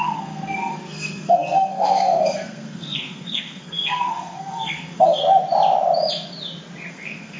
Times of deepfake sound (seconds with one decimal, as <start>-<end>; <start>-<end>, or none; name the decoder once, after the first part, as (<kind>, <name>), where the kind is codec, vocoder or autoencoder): 0.0-5.2 (codec, SNAC); 6.9-7.4